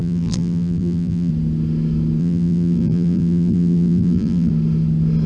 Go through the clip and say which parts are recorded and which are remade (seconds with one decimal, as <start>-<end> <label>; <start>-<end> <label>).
0.0-1.3 remade; 1.3-2.2 recorded; 2.2-4.5 remade; 4.5-5.3 recorded